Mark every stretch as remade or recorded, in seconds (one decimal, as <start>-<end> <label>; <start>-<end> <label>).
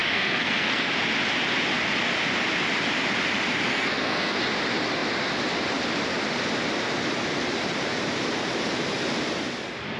0.0-0.9 remade; 0.9-3.7 recorded; 3.7-4.4 remade; 4.4-10.0 recorded